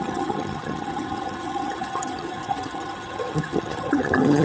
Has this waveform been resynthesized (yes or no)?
yes